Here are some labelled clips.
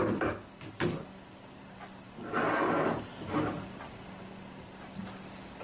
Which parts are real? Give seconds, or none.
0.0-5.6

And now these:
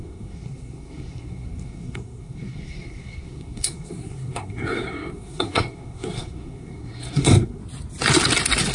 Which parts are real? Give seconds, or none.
7.6-8.7

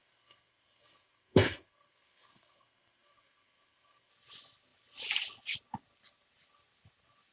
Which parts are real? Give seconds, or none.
4.1-7.3

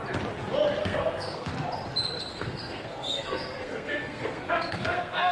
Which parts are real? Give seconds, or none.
0.0-0.8; 1.5-2.3